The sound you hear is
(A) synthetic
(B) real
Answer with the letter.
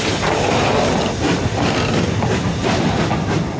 B